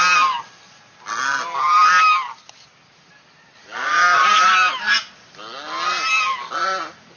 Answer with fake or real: real